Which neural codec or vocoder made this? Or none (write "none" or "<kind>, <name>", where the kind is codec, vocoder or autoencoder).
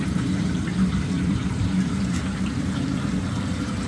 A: vocoder, BigVGAN v2